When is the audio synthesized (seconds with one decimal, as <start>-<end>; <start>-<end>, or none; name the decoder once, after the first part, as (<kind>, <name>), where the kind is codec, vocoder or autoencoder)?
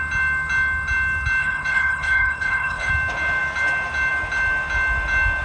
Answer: 1.4-2.9 (codec, HILCodec)